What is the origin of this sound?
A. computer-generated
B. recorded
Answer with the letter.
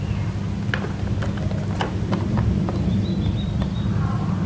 B